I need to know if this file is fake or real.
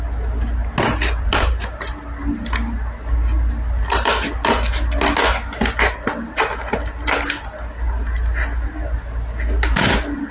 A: real